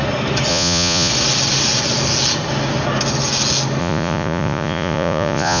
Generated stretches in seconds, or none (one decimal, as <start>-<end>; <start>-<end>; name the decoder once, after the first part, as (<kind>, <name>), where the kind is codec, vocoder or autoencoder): 0.5-1.1 (vocoder, Vocos); 3.8-5.6